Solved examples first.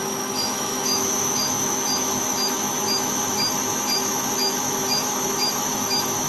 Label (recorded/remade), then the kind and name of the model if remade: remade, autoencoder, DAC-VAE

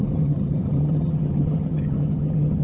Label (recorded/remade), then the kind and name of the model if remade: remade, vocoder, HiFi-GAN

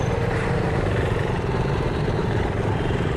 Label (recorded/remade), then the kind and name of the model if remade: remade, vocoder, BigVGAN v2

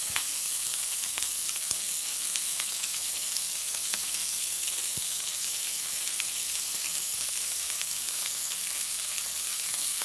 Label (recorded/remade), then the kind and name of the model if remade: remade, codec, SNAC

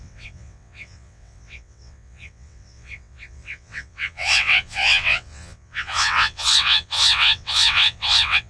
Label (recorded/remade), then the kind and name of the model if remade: remade, vocoder, WaveNeXt